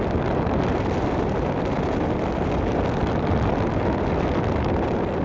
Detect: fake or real real